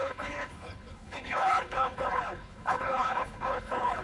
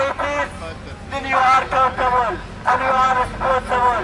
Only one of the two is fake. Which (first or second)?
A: first